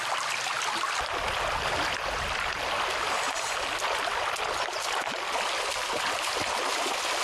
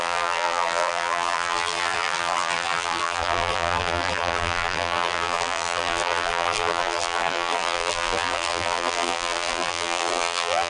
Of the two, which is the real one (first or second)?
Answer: first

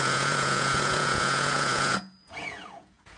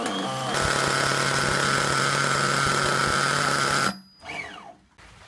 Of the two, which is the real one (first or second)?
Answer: second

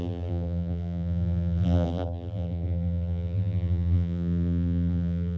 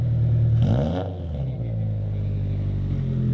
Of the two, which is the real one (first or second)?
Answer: second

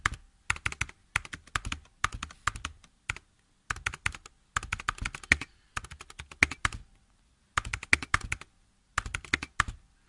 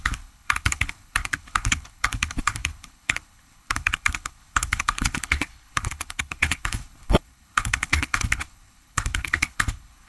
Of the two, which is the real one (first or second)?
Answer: first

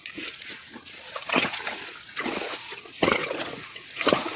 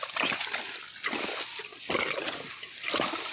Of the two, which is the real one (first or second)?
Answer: second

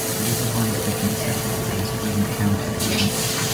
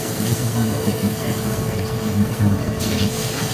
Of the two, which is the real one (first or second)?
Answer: first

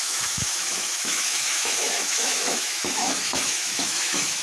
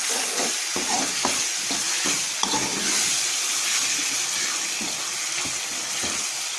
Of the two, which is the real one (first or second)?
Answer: second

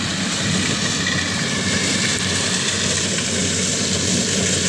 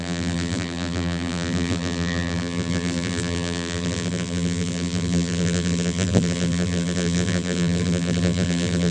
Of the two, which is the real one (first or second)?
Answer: first